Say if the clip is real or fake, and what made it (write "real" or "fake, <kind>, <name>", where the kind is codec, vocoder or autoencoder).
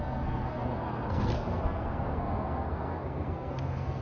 fake, codec, SNAC